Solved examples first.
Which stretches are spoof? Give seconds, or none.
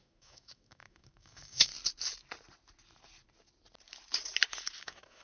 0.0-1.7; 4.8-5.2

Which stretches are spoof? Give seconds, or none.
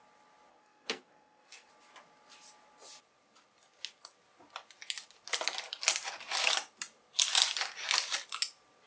0.5-1.7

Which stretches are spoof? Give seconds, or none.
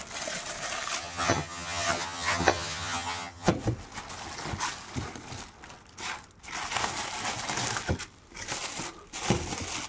1.0-3.5